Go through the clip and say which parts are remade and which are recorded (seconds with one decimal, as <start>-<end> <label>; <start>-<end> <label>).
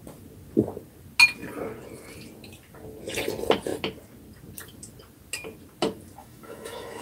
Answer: 0.0-6.2 recorded; 6.2-7.0 remade